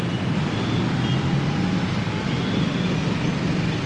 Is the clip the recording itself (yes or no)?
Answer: yes